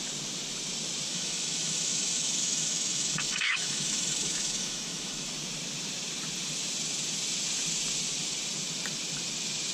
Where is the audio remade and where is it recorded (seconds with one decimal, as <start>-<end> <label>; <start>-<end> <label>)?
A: 0.0-1.1 recorded; 1.1-5.3 remade; 5.3-9.7 recorded